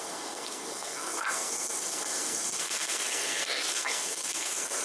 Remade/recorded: remade